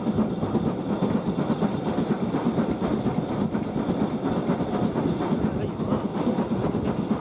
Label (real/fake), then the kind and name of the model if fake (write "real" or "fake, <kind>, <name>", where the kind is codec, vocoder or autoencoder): real